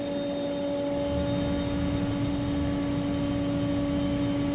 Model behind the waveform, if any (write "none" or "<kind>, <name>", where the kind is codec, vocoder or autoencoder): none